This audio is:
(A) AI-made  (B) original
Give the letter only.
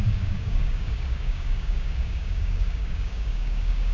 A